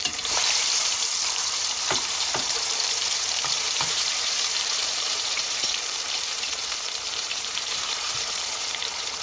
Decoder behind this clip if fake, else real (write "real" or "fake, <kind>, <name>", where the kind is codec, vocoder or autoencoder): fake, vocoder, BigVGAN v2